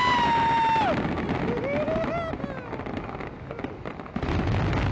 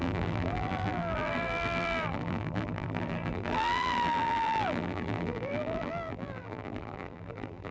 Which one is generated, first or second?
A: second